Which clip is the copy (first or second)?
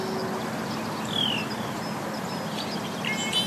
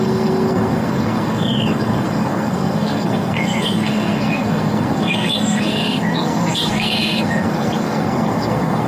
second